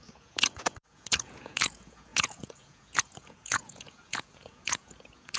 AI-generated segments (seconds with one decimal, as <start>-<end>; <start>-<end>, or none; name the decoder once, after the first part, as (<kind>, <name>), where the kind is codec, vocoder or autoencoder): 0.0-5.4 (vocoder, Vocos)